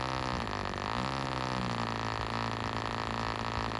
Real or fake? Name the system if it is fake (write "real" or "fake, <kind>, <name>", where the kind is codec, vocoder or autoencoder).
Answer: real